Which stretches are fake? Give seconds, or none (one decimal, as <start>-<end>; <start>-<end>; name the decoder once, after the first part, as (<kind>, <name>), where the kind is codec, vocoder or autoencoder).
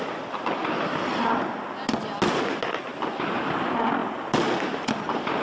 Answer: 2.9-3.6 (vocoder, BigVGAN v2)